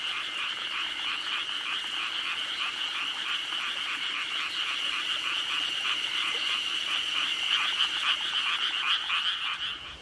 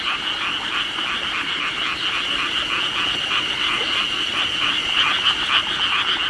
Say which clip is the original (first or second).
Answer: second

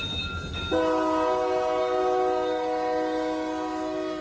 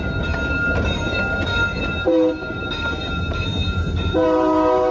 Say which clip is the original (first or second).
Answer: first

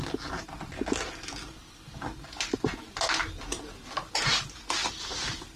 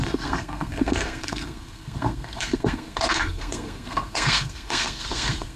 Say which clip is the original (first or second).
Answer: first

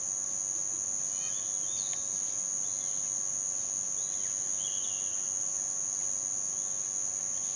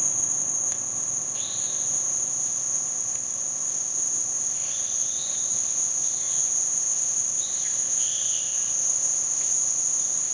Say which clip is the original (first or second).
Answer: first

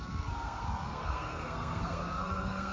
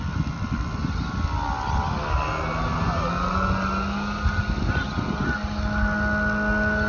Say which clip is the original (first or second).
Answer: second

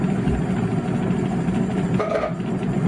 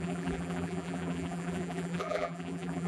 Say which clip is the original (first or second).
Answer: first